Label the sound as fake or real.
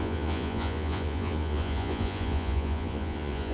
fake